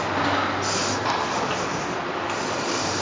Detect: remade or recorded recorded